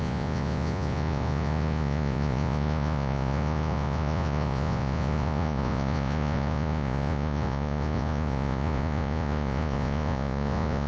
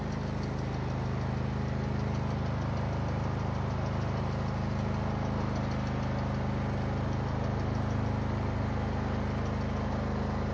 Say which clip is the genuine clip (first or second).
second